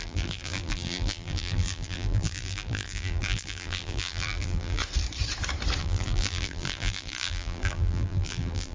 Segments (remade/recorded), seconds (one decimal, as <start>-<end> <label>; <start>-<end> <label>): 0.0-4.8 remade; 4.8-5.8 recorded; 5.8-8.7 remade